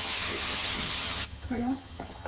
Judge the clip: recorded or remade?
remade